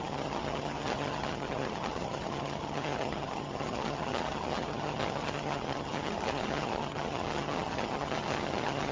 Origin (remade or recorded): remade